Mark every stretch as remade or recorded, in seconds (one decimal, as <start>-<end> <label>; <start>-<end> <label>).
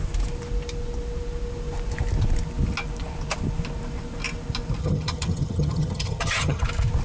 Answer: 0.0-4.8 recorded; 4.8-6.6 remade; 6.6-7.0 recorded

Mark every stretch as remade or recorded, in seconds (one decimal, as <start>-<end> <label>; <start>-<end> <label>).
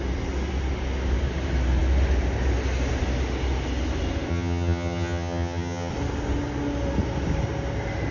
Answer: 0.0-4.3 recorded; 4.3-5.9 remade; 5.9-8.1 recorded